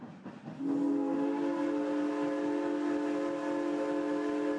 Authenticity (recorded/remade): recorded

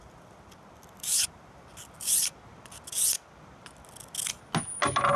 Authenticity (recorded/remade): recorded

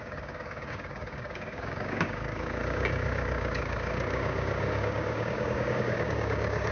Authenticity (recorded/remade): remade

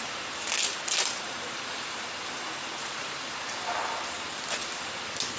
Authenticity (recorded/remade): recorded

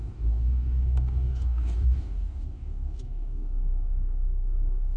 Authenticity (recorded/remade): remade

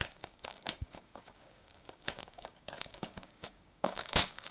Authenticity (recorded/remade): remade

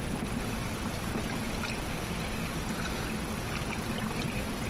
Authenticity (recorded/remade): recorded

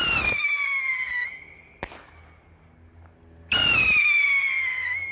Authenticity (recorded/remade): recorded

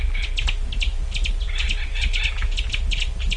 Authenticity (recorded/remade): recorded